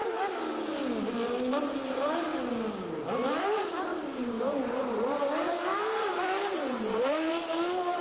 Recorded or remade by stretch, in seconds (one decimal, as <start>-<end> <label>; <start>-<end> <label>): 0.0-1.6 recorded; 1.6-2.3 remade; 2.3-3.4 recorded; 3.4-8.0 remade